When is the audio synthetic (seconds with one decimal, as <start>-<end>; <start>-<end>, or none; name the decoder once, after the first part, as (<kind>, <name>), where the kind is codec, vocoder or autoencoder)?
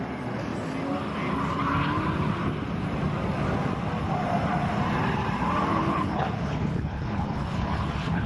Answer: 5.7-8.3 (codec, HILCodec)